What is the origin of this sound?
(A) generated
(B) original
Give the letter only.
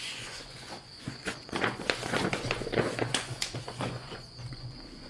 A